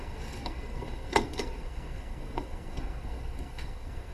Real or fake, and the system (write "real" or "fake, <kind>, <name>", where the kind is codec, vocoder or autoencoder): fake, codec, SNAC